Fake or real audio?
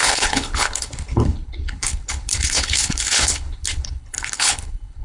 fake